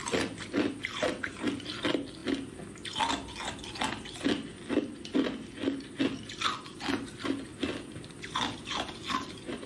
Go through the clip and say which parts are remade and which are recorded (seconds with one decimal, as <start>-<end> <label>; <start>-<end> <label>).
0.0-9.7 recorded